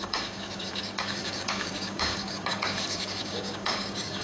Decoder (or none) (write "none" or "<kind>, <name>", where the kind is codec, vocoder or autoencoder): codec, DAC